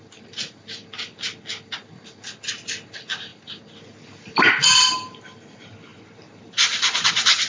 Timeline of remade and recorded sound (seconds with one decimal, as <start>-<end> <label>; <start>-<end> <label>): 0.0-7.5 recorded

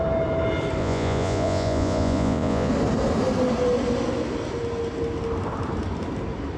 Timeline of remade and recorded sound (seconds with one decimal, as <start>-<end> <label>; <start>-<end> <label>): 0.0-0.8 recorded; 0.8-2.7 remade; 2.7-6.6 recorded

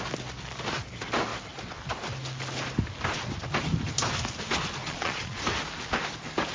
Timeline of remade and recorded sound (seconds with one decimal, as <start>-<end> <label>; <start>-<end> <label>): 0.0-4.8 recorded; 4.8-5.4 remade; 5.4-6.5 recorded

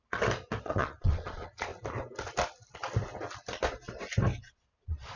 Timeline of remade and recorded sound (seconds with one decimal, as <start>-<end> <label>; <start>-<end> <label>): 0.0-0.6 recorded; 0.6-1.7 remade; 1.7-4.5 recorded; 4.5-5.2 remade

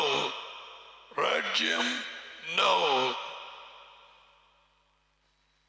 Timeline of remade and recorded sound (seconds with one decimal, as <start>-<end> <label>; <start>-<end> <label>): 0.0-5.7 recorded

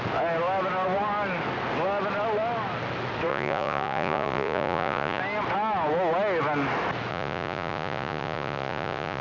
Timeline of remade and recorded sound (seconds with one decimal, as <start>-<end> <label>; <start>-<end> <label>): 0.0-3.3 recorded; 3.3-5.2 remade; 5.2-7.1 recorded; 7.1-9.2 remade

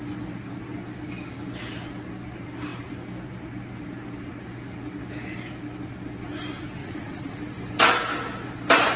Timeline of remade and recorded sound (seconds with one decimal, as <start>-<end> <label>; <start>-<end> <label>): 0.0-6.8 recorded; 6.8-7.4 remade; 7.4-9.0 recorded

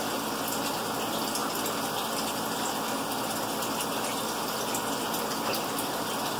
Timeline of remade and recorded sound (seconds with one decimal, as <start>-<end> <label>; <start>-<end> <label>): 0.0-6.4 recorded